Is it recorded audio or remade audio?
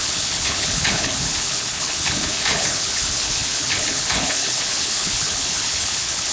remade